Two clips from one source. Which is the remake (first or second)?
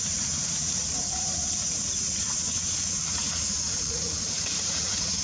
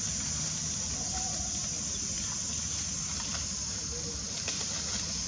first